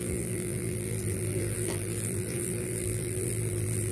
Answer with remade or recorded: remade